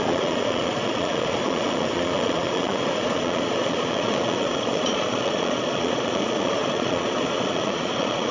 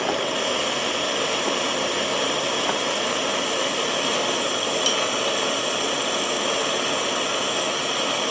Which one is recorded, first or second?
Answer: second